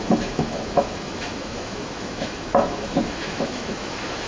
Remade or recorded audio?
remade